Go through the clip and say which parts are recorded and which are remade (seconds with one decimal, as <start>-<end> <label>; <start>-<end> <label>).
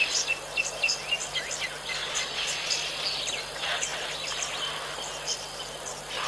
0.0-2.0 recorded; 2.0-2.7 remade; 2.7-6.3 recorded